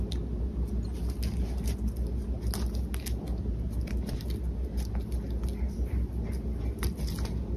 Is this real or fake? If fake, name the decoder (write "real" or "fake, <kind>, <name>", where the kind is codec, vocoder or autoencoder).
real